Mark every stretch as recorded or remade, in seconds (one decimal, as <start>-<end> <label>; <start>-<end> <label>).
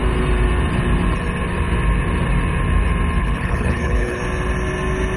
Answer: 0.0-3.2 recorded; 3.2-4.2 remade; 4.2-5.2 recorded